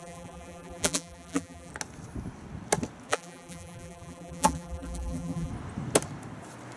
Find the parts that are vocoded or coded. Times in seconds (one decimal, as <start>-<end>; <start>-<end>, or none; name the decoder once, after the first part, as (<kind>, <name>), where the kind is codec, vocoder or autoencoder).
0.0-1.7 (vocoder, BigVGAN v2); 3.1-5.5